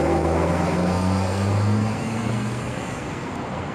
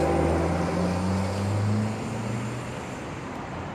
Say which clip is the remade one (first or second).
first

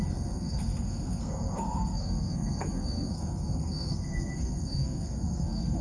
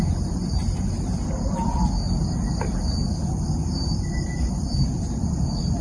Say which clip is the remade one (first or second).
first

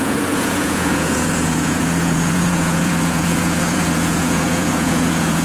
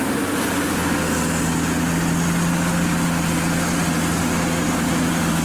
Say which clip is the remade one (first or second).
first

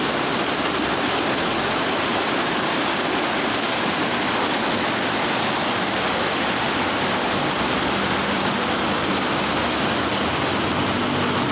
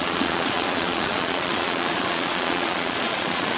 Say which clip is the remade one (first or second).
second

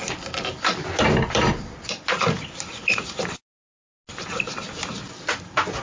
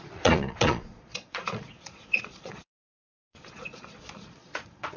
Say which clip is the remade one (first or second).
second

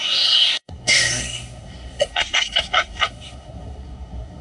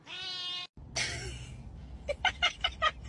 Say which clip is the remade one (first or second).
first